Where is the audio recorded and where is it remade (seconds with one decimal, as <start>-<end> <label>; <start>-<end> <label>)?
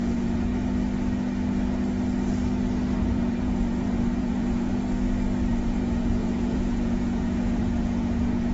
0.0-0.5 remade; 0.5-3.0 recorded; 3.0-4.7 remade; 4.7-5.5 recorded; 5.5-8.5 remade